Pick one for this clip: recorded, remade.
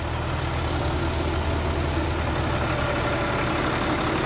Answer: recorded